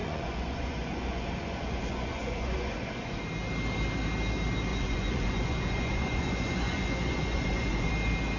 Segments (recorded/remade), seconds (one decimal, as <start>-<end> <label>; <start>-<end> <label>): 0.0-3.2 remade; 3.2-4.7 recorded; 4.7-7.9 remade; 7.9-8.4 recorded